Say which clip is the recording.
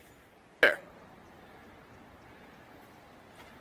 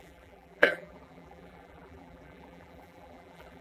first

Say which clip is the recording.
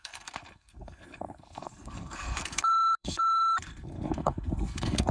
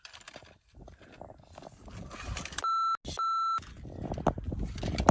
second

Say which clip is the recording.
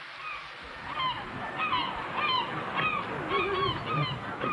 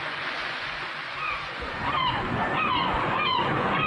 first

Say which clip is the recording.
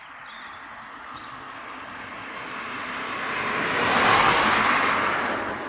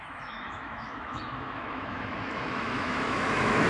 first